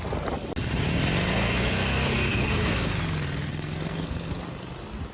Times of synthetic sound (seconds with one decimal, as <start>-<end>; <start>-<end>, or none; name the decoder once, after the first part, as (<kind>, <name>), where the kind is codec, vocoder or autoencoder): 1.3-3.0 (codec, SNAC); 3.5-4.3